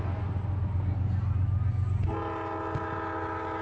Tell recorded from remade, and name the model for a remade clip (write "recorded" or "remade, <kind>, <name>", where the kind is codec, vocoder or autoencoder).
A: recorded